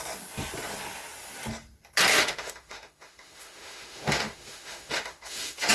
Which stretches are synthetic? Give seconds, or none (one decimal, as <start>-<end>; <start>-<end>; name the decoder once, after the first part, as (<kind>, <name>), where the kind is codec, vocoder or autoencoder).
2.1-5.7 (autoencoder, DAC-VAE)

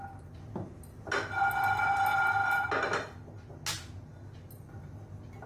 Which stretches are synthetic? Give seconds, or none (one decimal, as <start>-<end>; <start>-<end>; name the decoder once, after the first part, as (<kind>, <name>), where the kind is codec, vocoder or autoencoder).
none

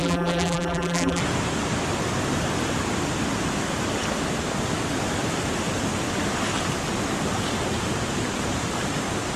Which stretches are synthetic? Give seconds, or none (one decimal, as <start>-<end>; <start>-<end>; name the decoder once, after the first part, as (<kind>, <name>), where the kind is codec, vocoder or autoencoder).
0.0-1.2 (vocoder, BigVGAN v2)

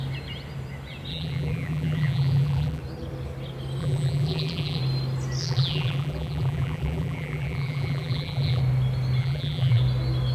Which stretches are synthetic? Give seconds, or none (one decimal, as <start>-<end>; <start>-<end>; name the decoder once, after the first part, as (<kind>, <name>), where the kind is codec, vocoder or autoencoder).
1.1-2.8 (vocoder, BigVGAN v2); 3.8-4.8; 5.4-8.6; 9.2-9.8